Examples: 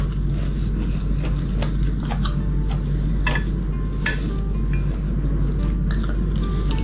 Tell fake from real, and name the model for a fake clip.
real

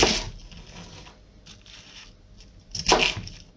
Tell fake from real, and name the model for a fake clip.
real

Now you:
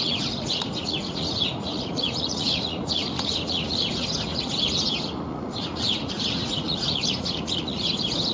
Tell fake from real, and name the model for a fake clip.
fake, vocoder, Vocos